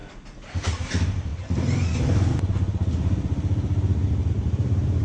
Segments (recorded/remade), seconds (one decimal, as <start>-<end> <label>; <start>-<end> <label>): 0.0-0.6 recorded; 0.6-1.3 remade; 1.3-4.3 recorded; 4.3-5.0 remade